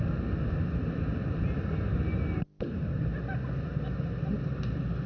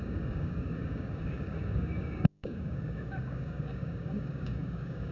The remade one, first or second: second